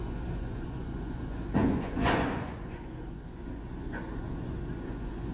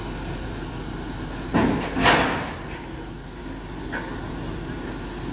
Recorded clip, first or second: second